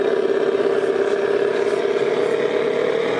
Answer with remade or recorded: recorded